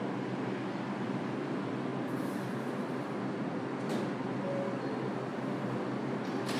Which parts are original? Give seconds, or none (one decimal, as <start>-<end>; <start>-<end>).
0.0-6.6